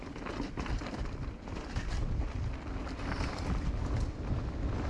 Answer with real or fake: real